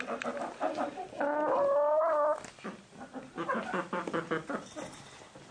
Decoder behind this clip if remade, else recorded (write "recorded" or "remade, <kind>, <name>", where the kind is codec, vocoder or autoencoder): recorded